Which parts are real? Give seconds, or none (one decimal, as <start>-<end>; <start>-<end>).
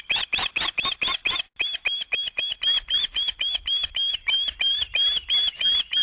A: 0.0-6.0